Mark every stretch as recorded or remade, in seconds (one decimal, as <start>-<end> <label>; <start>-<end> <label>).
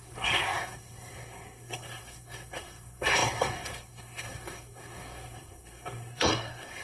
0.0-6.8 remade